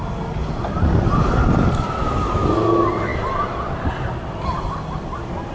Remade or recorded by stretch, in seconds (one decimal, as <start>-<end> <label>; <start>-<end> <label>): 0.0-5.5 recorded